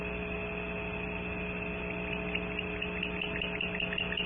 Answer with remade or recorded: recorded